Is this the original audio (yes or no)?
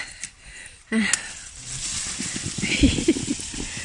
yes